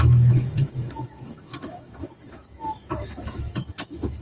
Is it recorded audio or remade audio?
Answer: remade